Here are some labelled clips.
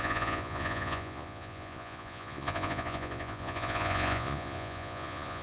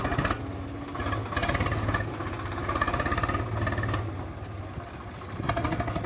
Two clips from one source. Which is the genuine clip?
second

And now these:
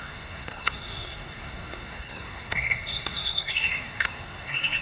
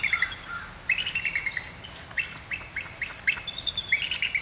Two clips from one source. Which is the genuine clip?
second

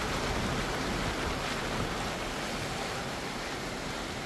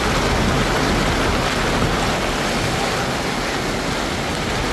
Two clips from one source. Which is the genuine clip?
second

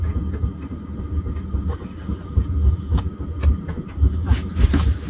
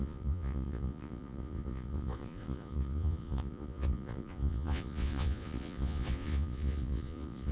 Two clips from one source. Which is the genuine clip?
first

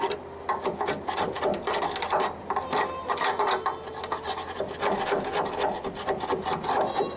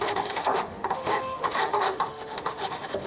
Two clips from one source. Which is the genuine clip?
first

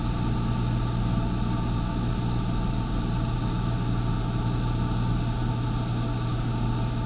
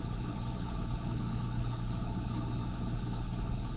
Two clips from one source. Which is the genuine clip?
first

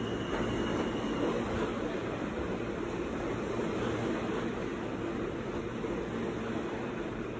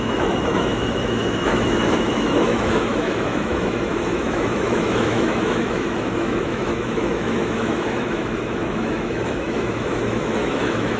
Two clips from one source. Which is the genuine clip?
first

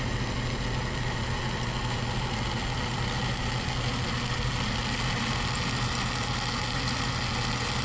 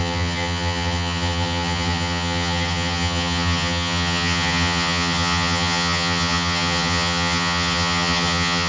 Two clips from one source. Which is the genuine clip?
first